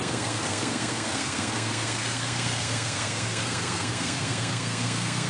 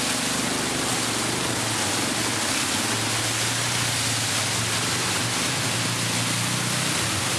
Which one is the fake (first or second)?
first